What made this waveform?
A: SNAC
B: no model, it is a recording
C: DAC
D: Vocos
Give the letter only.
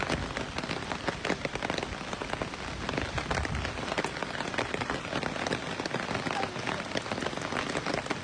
B